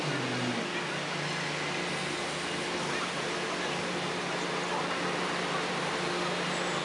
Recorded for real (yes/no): yes